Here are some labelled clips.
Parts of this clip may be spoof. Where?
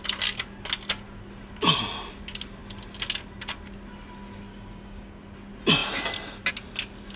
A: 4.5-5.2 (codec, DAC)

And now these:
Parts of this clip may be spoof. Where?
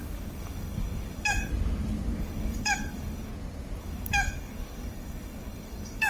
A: 0.0-1.5 (codec, DAC); 2.2-3.3; 3.8-6.1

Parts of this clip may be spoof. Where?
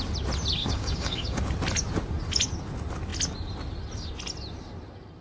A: 0.6-1.4 (codec, DAC)